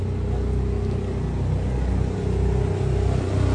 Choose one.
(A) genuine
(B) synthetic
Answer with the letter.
A